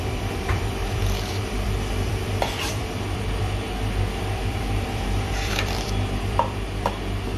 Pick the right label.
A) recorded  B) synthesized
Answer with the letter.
B